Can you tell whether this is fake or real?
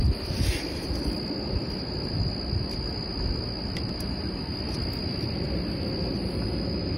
real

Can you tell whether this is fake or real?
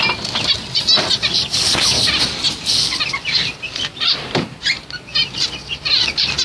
real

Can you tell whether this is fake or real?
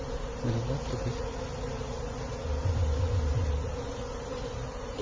real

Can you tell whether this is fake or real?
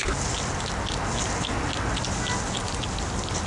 real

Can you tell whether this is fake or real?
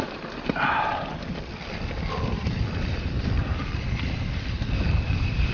fake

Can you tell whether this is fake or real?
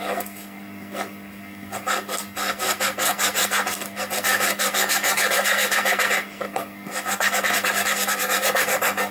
fake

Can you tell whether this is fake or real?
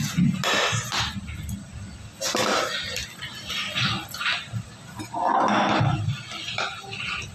real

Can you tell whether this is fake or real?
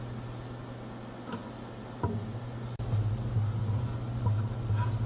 real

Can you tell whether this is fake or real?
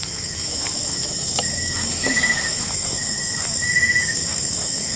fake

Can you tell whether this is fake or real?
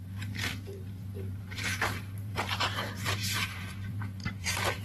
fake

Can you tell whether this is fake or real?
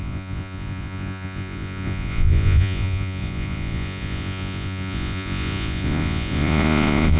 fake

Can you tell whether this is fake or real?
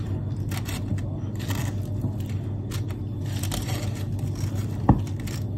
real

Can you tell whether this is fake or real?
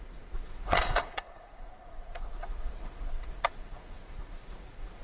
fake